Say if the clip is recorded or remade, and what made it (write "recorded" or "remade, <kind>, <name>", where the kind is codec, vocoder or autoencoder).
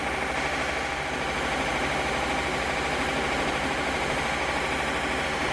remade, vocoder, BigVGAN v2